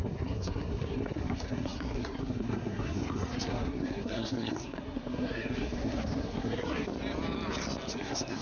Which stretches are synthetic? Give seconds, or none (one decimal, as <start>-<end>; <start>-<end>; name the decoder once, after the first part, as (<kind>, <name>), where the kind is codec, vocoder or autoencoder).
0.0-6.9 (codec, SNAC); 7.9-8.4